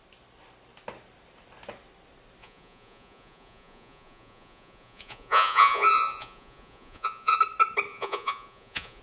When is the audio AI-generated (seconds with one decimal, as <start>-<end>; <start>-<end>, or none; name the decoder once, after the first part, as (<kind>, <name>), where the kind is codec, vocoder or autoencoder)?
2.4-7.4 (vocoder, Vocos); 7.9-9.0

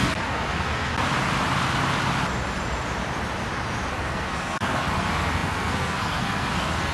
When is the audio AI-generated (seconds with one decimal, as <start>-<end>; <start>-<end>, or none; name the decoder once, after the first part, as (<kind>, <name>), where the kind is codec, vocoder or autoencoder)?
0.0-0.9 (codec, SNAC); 3.9-6.9

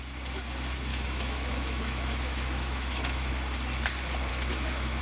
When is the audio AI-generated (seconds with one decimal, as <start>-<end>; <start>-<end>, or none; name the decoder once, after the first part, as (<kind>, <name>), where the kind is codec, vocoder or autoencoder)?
0.9-3.3 (autoencoder, DAC-VAE); 4.3-5.0

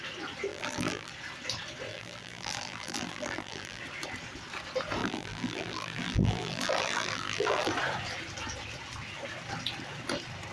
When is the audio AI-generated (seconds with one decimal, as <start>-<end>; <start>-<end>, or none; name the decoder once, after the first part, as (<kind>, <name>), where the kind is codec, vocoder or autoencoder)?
0.5-1.1 (vocoder, BigVGAN v2); 1.9-3.8; 5.0-7.7

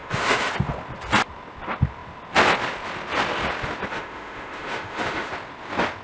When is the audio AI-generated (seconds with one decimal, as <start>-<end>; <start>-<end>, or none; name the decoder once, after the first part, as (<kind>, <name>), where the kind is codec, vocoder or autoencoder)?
0.0-0.5 (autoencoder, DAC-VAE); 3.9-5.3

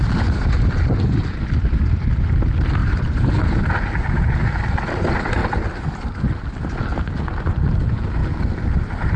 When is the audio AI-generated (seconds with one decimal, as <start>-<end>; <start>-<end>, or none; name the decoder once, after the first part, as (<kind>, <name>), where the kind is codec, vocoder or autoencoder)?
2.8-3.6 (vocoder, BigVGAN v2)

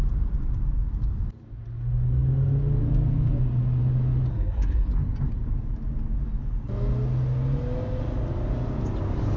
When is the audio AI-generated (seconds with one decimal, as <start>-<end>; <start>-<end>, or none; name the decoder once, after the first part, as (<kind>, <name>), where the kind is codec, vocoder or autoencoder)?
4.3-4.9 (codec, SNAC)